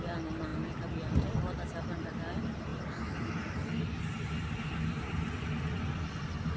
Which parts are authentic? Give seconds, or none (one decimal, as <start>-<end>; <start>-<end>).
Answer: 0.0-6.6